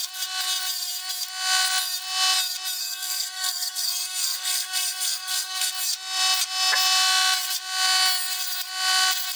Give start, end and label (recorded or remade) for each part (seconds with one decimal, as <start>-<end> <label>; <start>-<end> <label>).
0.0-2.8 recorded; 2.8-5.7 remade; 5.7-9.4 recorded